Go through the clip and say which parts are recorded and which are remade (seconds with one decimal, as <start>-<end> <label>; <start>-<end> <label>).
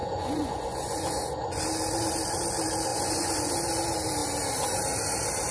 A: 0.0-1.6 remade; 1.6-2.9 recorded; 2.9-3.5 remade; 3.5-5.5 recorded